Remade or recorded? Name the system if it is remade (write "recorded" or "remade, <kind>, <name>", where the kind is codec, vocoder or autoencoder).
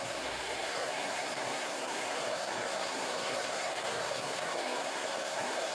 remade, codec, SNAC